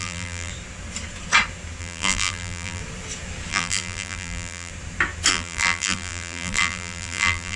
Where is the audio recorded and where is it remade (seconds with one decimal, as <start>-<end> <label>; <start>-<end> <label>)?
0.0-0.5 remade; 0.5-1.8 recorded; 1.8-2.8 remade; 2.8-3.5 recorded; 3.5-4.7 remade; 4.7-5.3 recorded; 5.3-7.6 remade